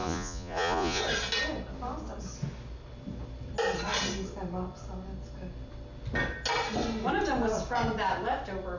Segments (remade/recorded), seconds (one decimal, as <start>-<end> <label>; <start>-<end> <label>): 0.0-1.0 remade; 1.0-8.8 recorded